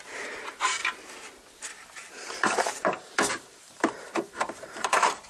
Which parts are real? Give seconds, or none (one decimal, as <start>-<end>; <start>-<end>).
0.0-2.0